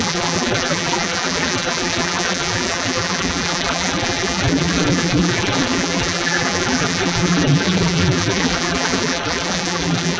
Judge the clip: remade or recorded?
remade